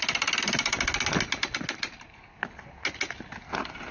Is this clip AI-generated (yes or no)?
no